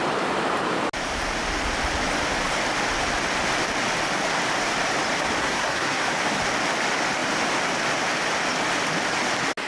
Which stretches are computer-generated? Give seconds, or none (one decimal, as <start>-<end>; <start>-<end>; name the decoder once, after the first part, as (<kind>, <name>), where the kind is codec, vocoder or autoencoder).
5.4-6.0 (codec, SNAC)

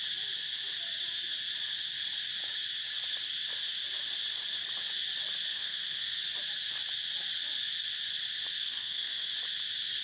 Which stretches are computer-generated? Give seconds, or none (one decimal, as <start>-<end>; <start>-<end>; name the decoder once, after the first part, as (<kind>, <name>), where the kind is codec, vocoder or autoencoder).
5.5-6.2 (codec, SNAC); 8.6-9.3

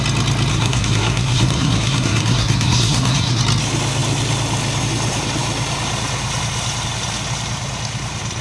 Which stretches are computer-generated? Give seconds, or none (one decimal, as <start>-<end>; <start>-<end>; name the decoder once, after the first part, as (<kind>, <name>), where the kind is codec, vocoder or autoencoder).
0.5-3.4 (codec, SNAC)

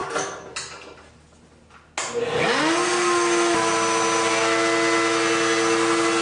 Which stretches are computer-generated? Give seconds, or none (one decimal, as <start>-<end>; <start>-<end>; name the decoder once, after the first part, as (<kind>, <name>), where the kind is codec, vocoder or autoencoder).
none

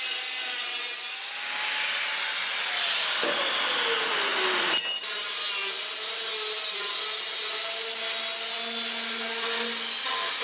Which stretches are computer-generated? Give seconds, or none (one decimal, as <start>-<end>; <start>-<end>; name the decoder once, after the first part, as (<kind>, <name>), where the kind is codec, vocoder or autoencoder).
none

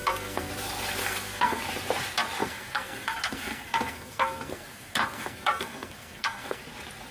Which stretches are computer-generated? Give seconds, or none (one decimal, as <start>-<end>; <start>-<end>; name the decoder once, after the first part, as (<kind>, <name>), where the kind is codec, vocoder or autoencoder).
0.0-0.5 (codec, SNAC); 1.0-1.6; 2.4-6.6

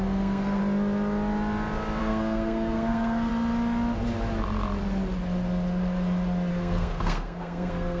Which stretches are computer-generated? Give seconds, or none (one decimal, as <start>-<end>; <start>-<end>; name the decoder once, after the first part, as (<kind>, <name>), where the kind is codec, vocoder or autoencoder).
0.0-0.6 (codec, SNAC); 2.0-3.3; 6.5-8.0

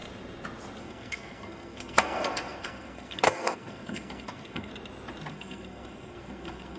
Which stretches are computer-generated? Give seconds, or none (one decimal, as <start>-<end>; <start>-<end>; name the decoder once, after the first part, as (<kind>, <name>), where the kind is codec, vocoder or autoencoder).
0.8-4.7 (codec, SNAC); 5.3-6.8